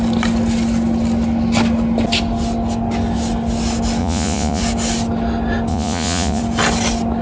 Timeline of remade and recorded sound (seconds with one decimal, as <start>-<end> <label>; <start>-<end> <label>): 0.0-4.0 recorded; 4.0-4.6 remade; 4.6-5.7 recorded; 5.7-6.4 remade; 6.4-7.2 recorded